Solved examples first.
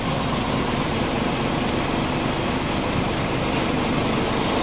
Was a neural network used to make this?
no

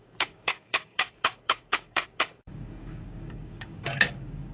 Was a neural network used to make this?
yes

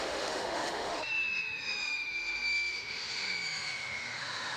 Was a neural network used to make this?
yes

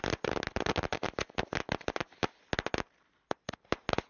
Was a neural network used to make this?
no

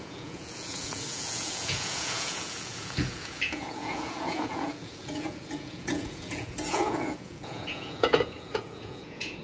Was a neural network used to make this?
yes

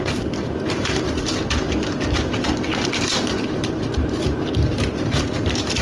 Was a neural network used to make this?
yes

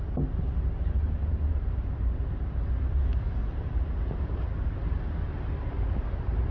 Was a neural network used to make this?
no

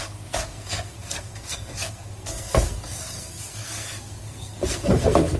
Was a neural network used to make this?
yes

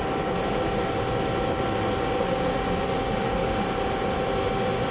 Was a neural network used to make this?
no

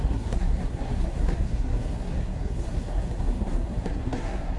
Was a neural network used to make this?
yes